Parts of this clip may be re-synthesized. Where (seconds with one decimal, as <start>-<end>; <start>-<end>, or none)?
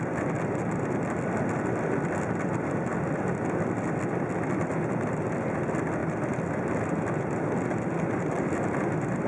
0.0-9.3